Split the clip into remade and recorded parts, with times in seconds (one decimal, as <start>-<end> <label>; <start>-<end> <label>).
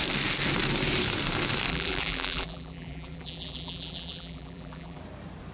0.0-1.7 recorded; 1.7-5.0 remade; 5.0-5.5 recorded